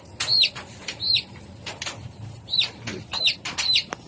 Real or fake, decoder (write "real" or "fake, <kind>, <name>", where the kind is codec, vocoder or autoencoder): fake, vocoder, BigVGAN v2